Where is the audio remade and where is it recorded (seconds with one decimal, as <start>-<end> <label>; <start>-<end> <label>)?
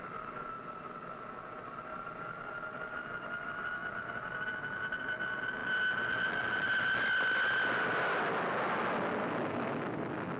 0.0-10.4 recorded